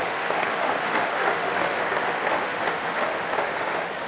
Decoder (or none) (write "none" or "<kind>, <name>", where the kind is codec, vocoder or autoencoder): autoencoder, DAC-VAE